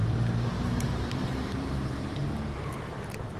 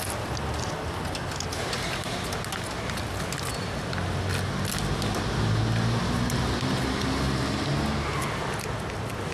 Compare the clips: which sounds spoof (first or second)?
first